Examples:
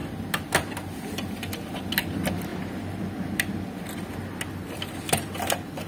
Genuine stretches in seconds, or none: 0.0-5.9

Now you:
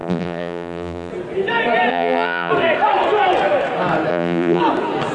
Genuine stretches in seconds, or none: 1.1-1.9; 2.5-4.1; 4.6-5.1

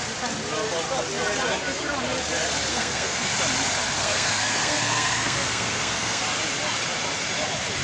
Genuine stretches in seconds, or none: 0.0-2.7; 3.3-4.0; 6.2-7.8

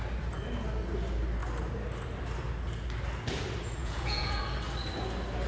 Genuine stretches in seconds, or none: 0.0-3.8; 4.4-5.5